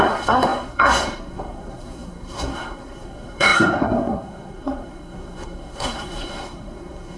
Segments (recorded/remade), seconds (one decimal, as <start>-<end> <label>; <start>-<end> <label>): 0.0-7.2 remade